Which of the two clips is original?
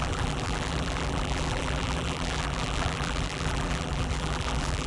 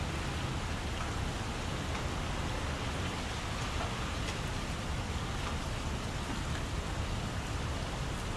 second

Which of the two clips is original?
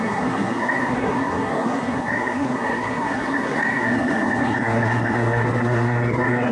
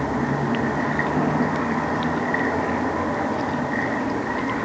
second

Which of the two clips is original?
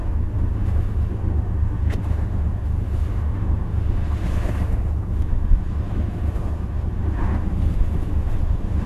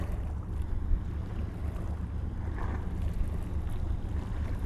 second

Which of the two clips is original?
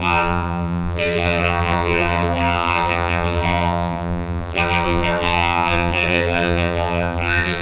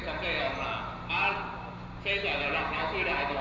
second